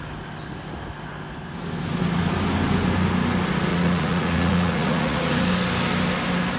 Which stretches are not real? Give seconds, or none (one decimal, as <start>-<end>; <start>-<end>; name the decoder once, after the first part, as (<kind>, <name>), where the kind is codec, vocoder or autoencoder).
3.7-5.3 (vocoder, Vocos)